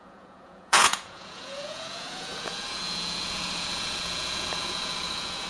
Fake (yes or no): yes